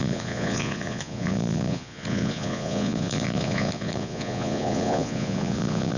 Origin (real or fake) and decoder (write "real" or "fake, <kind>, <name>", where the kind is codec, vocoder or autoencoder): fake, vocoder, Vocos